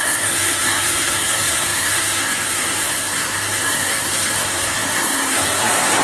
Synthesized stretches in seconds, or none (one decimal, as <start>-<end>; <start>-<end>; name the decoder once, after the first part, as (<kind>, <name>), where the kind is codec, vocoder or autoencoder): 0.0-6.0 (codec, SNAC)